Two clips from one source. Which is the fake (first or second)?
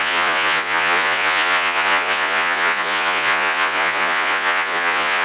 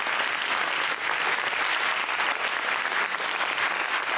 first